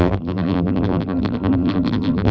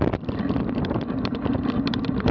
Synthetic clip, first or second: first